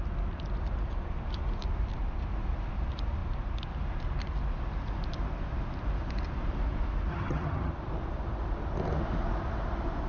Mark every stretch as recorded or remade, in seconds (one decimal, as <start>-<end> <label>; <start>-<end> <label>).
0.0-7.1 recorded; 7.1-7.7 remade; 7.7-10.1 recorded